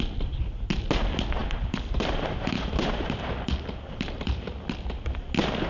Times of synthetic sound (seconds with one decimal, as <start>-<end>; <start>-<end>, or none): 1.4-4.5